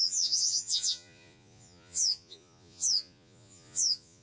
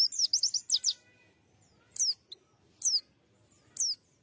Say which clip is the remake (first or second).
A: first